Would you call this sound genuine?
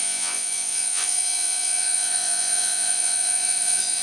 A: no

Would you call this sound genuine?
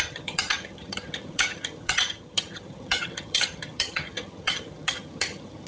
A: no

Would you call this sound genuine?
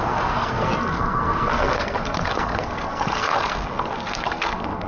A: no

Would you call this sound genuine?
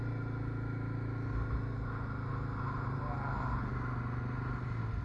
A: yes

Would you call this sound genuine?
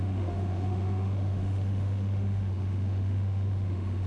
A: no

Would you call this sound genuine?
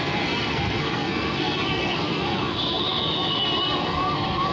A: no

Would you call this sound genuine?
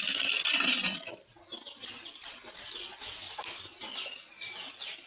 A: yes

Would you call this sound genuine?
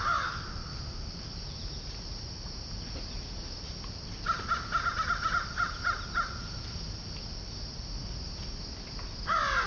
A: yes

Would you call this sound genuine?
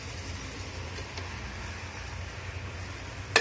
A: yes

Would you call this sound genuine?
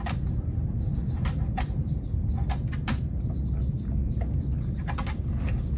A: yes